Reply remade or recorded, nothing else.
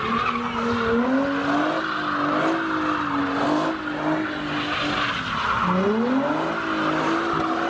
recorded